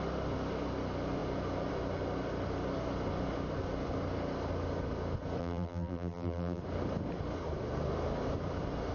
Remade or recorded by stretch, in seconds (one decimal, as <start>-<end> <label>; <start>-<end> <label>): 0.0-5.4 recorded; 5.4-6.6 remade; 6.6-8.9 recorded